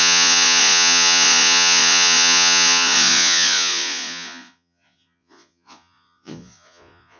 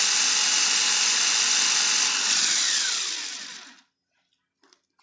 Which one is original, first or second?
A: second